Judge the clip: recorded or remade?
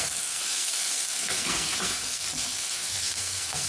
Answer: remade